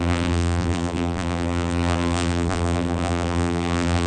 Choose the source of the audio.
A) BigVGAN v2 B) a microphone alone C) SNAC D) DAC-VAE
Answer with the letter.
A